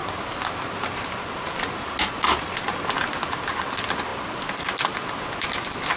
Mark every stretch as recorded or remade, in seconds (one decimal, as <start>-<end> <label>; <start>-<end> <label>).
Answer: 0.0-6.0 recorded